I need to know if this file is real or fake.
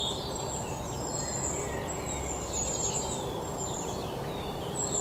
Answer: real